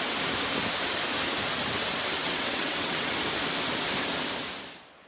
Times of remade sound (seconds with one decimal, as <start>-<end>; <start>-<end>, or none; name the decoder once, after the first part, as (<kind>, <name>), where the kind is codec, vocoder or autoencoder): 2.2-3.1 (vocoder, WaveNeXt)